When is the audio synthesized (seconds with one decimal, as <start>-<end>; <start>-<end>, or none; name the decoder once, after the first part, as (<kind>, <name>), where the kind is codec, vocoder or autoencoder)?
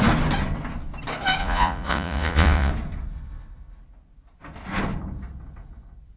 1.4-2.7 (vocoder, Vocos)